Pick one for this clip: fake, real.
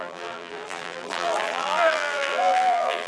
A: fake